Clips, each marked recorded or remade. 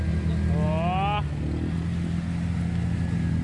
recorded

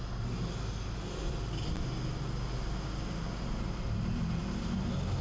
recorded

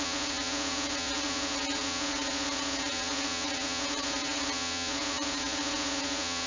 remade